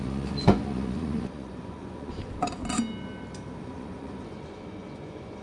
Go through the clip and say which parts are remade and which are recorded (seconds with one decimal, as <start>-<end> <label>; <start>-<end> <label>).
0.0-2.6 remade; 2.6-3.6 recorded; 3.6-5.4 remade